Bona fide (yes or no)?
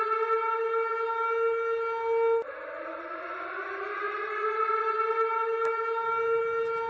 yes